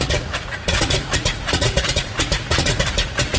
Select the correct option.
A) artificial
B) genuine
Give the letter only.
A